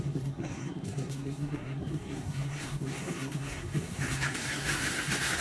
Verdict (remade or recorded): remade